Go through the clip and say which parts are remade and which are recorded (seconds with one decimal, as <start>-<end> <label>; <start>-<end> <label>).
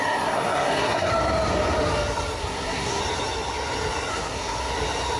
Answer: 0.0-1.1 remade; 1.1-2.4 recorded; 2.4-3.0 remade; 3.0-4.1 recorded; 4.1-4.7 remade; 4.7-5.2 recorded